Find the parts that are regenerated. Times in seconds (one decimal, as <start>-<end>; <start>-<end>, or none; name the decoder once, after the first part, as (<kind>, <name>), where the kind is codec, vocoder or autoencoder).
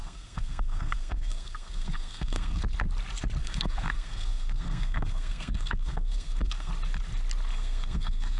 0.0-2.6 (codec, SNAC); 3.4-6.7; 7.5-8.4